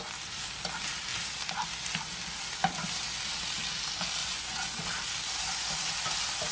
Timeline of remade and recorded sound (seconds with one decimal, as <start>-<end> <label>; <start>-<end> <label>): 0.0-4.2 recorded; 4.2-4.8 remade; 4.8-6.5 recorded